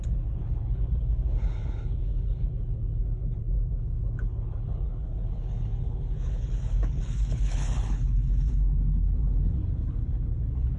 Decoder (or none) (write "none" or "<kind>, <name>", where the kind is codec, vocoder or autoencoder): codec, HILCodec